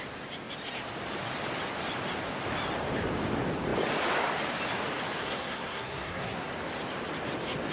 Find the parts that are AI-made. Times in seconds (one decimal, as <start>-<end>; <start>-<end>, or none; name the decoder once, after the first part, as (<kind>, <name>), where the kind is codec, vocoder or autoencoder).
5.2-6.5 (codec, SNAC)